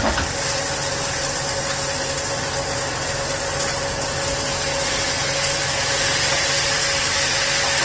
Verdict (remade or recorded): recorded